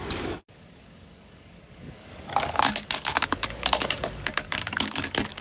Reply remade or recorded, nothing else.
remade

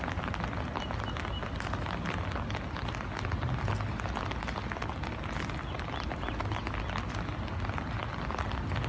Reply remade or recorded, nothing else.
recorded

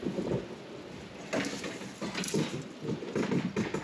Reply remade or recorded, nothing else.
recorded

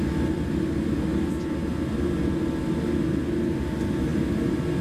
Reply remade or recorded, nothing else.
recorded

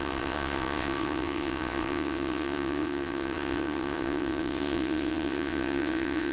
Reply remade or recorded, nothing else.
remade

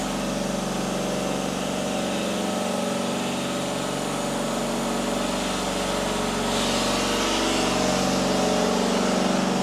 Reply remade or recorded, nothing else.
recorded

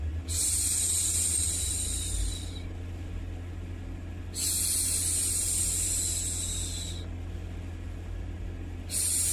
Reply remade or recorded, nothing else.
recorded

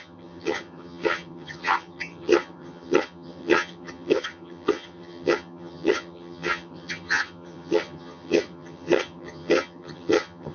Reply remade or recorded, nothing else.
remade